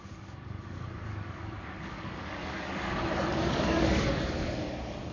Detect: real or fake fake